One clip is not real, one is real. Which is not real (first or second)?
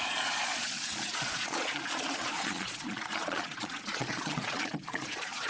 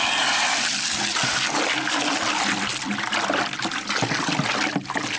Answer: first